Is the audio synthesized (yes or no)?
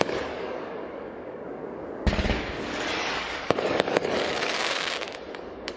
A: yes